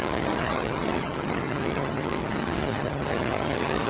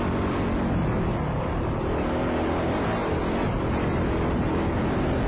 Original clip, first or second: second